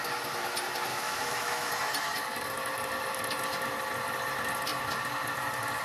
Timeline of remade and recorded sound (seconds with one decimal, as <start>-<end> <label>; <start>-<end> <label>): 0.0-0.9 recorded; 0.9-1.7 remade; 1.7-5.8 recorded